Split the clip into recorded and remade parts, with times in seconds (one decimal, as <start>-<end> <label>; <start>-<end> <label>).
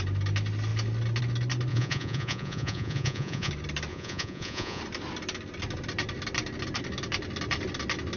0.0-1.7 recorded; 1.7-3.5 remade; 3.5-3.9 recorded; 3.9-4.8 remade; 4.8-8.2 recorded